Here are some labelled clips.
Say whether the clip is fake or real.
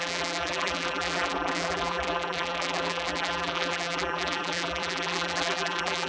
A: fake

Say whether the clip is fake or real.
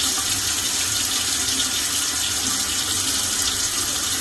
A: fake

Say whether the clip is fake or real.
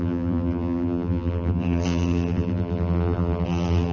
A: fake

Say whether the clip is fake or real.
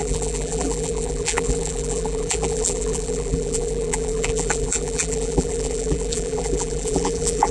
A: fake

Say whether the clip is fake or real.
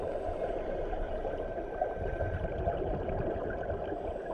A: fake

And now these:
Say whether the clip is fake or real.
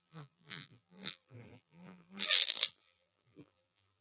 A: fake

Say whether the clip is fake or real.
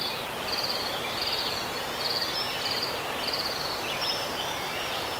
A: fake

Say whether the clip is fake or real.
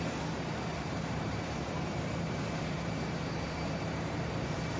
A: fake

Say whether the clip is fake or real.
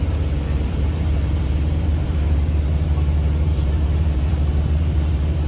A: fake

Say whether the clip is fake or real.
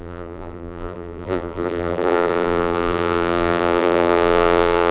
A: fake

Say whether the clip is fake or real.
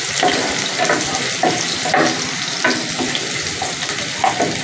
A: real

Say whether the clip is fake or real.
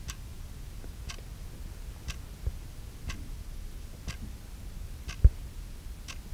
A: real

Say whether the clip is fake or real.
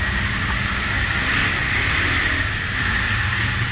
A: real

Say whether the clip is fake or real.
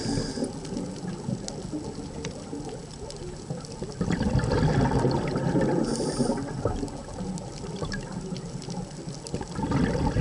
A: real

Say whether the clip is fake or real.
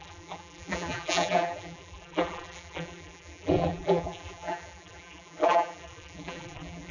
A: fake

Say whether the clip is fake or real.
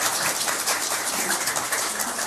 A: fake